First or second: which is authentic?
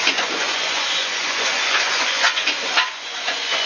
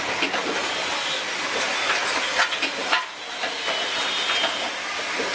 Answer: second